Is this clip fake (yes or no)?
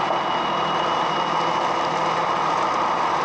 no